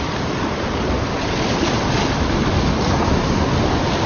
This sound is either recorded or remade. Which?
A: recorded